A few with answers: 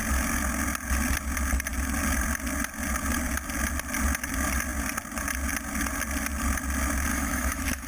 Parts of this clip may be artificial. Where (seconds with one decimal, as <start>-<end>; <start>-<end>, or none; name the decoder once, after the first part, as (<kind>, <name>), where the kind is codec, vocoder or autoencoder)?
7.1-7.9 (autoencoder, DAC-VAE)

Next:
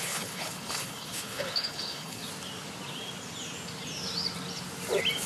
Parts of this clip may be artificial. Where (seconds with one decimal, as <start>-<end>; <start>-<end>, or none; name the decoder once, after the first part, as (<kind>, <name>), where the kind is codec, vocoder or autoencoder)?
0.0-2.2 (codec, HILCodec)

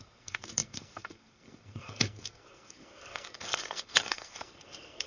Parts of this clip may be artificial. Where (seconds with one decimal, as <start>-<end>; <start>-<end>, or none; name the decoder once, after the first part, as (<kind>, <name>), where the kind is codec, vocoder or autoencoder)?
0.0-5.1 (codec, SNAC)

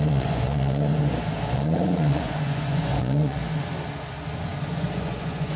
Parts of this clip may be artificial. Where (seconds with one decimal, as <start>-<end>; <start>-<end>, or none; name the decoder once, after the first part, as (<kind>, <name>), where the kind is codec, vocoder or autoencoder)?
0.0-0.9 (vocoder, Vocos); 1.5-3.4; 4.7-5.6

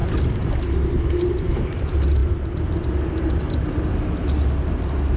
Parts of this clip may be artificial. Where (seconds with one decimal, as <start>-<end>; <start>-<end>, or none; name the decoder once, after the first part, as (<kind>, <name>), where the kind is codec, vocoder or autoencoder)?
none

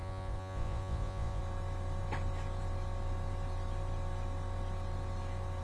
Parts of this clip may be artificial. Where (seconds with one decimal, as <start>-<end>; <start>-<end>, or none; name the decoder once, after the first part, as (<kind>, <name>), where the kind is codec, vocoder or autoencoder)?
0.0-1.4 (vocoder, Vocos)

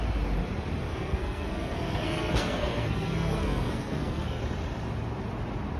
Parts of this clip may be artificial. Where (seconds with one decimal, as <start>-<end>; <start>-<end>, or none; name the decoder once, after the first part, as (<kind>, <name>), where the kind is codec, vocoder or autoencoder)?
0.9-4.4 (codec, SNAC)

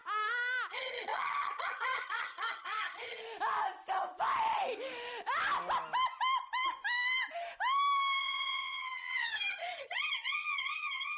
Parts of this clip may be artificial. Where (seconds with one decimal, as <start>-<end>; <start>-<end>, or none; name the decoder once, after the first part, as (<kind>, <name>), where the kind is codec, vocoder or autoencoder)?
0.7-3.2 (vocoder, HiFi-GAN); 8.2-11.2